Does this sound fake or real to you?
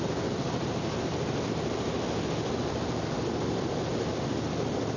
real